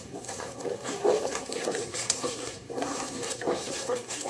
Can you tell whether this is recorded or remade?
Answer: remade